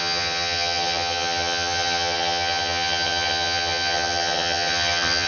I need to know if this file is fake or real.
fake